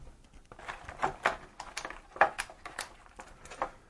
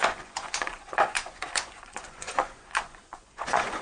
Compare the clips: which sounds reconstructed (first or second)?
second